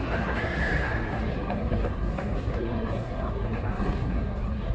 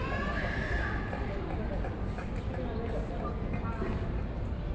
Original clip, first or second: second